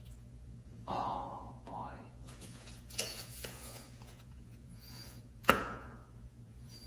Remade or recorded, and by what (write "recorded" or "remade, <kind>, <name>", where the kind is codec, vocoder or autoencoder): remade, vocoder, Vocos